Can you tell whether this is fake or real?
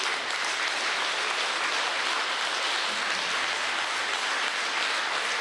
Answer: real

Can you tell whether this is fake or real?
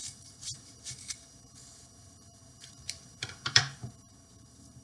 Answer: fake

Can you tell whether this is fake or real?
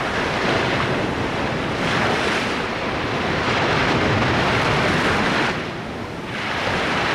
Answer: fake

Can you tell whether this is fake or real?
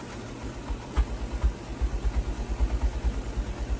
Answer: real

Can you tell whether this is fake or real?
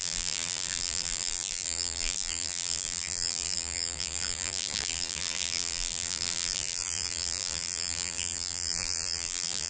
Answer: fake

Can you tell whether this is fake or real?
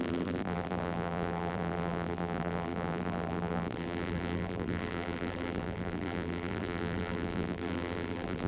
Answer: fake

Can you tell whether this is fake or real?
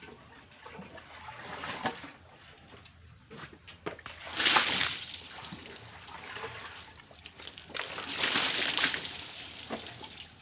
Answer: real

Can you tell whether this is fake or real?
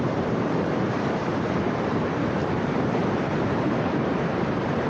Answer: fake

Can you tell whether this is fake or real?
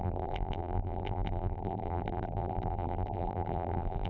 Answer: fake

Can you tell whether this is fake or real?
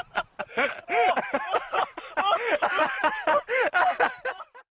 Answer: fake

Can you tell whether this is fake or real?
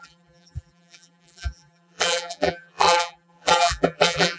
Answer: fake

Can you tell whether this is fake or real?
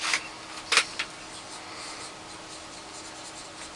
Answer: real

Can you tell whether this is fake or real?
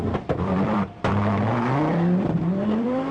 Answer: fake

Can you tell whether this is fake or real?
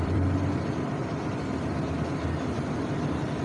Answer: fake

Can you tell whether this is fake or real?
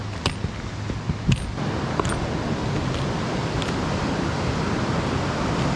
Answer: real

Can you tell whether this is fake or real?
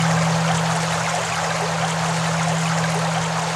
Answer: real